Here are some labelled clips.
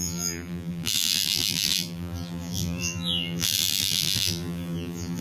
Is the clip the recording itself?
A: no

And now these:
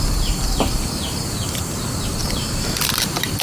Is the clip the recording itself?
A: no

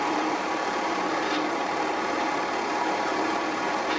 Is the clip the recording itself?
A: no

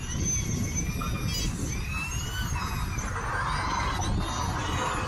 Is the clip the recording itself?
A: yes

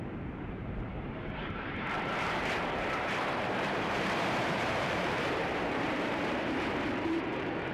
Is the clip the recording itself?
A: no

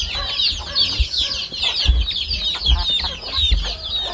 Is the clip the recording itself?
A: yes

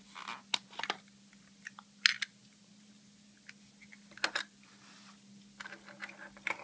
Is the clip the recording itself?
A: yes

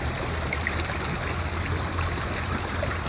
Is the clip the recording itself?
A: yes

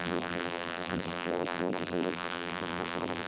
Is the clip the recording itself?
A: no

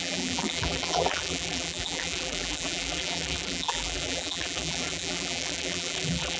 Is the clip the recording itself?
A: no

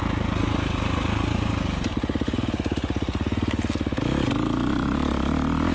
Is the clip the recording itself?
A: yes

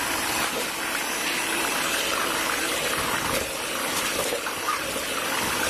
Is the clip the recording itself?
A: yes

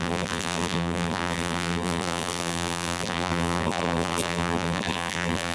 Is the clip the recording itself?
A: no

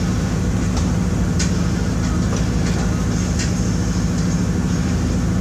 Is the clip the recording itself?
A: yes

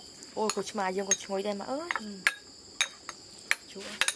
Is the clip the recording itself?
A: yes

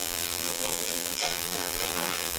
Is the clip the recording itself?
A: no